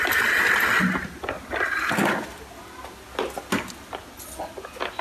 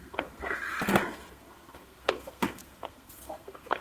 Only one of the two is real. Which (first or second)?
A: first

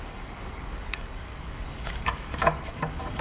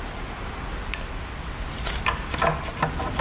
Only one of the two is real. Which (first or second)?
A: second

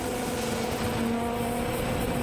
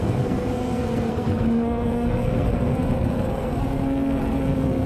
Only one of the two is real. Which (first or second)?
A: first